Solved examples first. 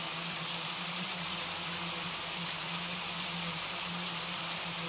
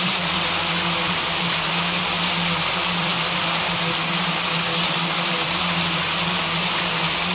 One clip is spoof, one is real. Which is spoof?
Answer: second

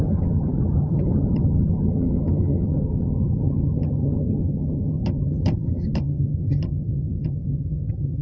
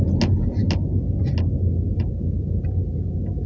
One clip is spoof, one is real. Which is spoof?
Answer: first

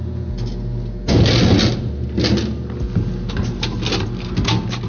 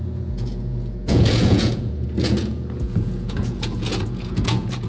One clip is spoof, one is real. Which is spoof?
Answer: second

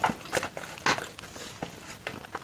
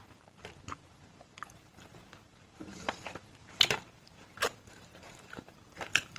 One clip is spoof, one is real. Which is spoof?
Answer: second